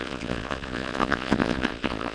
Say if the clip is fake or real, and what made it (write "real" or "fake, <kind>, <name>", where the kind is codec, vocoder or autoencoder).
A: fake, vocoder, Vocos